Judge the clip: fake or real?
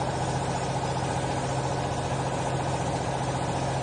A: real